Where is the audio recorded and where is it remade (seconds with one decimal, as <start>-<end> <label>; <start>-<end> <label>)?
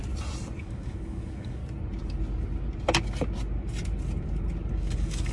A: 0.0-0.6 recorded; 0.6-1.6 remade; 1.6-4.7 recorded; 4.7-5.3 remade